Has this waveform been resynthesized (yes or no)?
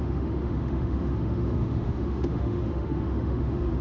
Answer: yes